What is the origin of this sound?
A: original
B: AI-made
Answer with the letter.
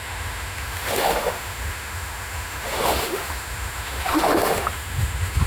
B